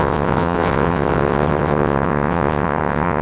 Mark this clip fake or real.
fake